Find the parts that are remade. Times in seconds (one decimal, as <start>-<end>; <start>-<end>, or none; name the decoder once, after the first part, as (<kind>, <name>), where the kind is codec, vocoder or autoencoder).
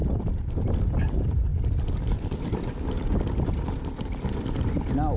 0.0-0.9 (vocoder, BigVGAN v2); 3.9-4.7